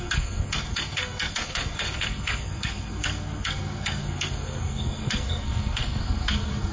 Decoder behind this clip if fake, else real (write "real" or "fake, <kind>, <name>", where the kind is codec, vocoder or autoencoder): fake, codec, SNAC